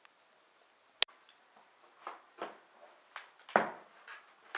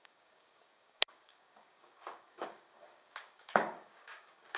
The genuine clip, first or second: first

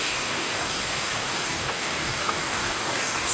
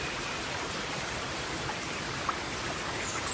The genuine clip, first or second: second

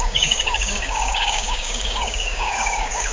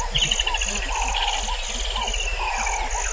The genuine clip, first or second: second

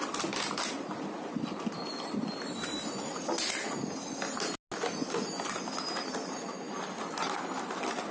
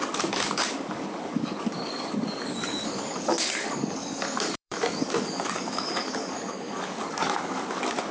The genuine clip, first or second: first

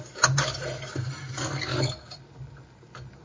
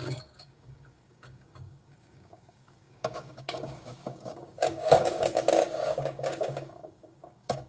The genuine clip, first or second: first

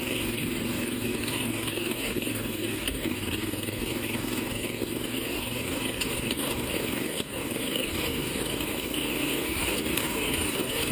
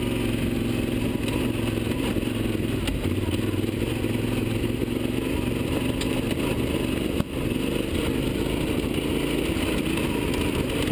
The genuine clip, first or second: second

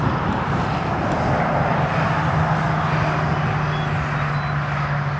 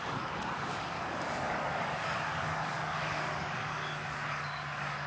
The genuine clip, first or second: first